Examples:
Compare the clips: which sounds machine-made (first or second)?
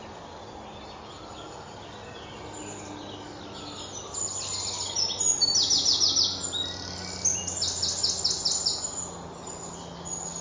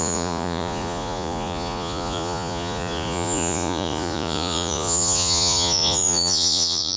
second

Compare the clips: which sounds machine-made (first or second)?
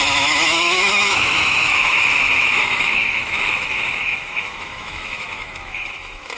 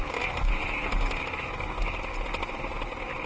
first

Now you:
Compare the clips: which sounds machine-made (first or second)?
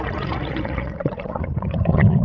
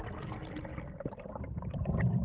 first